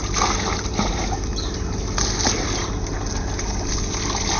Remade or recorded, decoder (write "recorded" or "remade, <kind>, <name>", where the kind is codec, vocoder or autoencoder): recorded